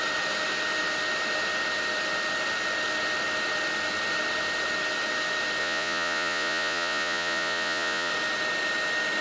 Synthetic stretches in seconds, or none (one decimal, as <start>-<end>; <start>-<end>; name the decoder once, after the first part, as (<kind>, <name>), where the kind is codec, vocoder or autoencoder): 5.6-8.1 (vocoder, Vocos)